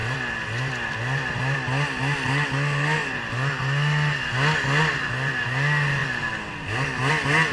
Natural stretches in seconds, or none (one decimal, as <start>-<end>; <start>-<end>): 0.0-7.5